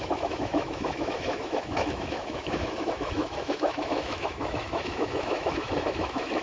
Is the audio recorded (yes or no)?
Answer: no